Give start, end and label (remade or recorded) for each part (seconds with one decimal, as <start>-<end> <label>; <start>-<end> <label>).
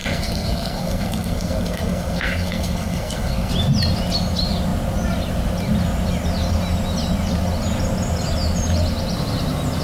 0.0-3.5 remade; 3.5-9.8 recorded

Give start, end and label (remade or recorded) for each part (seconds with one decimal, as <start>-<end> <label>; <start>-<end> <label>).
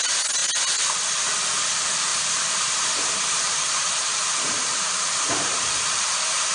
0.0-2.1 recorded; 2.1-6.0 remade; 6.0-6.5 recorded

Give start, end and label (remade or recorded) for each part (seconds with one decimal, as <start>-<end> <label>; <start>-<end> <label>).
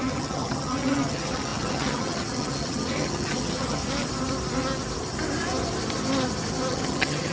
0.0-3.8 remade; 3.8-6.7 recorded; 6.7-7.3 remade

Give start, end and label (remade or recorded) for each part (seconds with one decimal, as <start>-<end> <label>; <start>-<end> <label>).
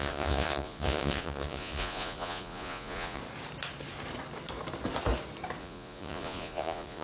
0.0-3.2 remade; 3.2-5.6 recorded; 5.6-7.0 remade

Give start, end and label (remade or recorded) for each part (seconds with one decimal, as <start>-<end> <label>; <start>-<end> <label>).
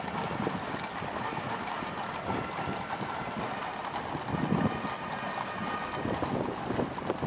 0.0-7.3 recorded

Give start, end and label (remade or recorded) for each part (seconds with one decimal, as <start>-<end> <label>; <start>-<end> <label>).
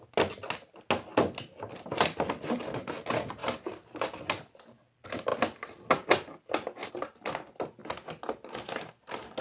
0.0-9.4 recorded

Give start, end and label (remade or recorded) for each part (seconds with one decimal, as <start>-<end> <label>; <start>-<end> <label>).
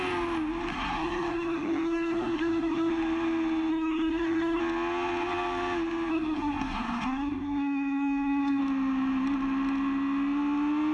0.0-0.7 recorded; 0.7-2.9 remade; 2.9-3.7 recorded; 3.7-4.6 remade; 4.6-6.1 recorded; 6.1-8.6 remade; 8.6-10.9 recorded